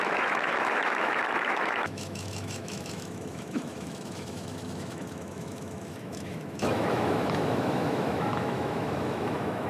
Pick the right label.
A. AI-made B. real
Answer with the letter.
A